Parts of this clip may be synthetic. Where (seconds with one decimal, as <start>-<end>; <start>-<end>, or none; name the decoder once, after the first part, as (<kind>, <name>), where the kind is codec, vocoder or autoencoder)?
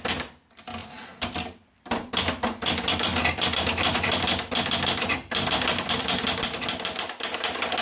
0.8-2.1 (vocoder, BigVGAN v2); 3.1-6.0